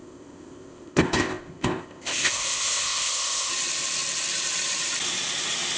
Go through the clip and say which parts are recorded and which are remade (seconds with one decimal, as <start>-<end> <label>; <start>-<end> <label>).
0.0-3.5 remade; 3.5-5.8 recorded

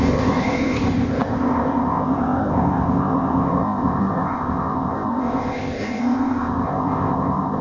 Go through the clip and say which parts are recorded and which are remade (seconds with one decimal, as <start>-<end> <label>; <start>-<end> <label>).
0.0-7.6 remade